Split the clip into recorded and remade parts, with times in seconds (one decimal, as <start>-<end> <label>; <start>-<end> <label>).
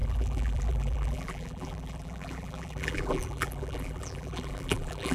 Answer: 0.0-5.1 remade